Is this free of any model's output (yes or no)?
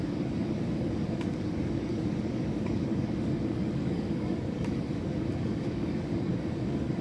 no